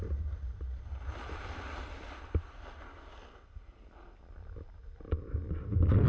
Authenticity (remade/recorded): recorded